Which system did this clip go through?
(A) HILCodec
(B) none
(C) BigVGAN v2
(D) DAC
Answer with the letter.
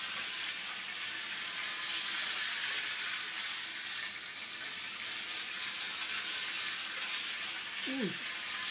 B